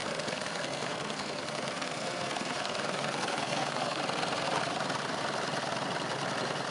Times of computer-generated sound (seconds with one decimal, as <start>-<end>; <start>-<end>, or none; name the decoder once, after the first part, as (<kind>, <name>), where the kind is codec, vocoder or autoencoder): 0.0-4.0 (codec, SNAC)